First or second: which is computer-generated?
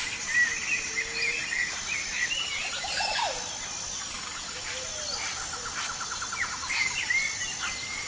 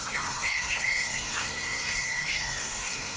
second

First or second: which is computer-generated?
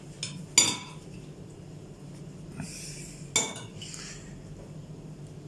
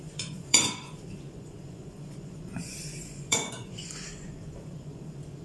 second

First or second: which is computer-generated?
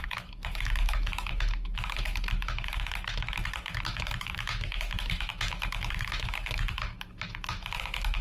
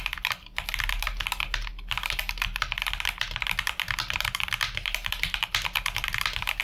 first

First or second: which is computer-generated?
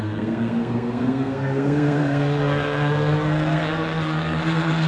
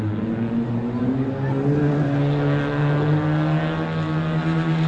first